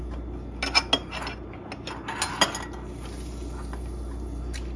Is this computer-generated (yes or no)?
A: no